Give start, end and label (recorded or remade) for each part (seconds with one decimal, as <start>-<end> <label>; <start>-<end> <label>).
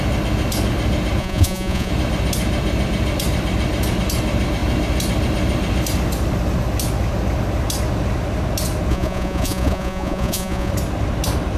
0.0-1.2 recorded; 1.2-1.9 remade; 1.9-8.9 recorded; 8.9-10.7 remade; 10.7-11.6 recorded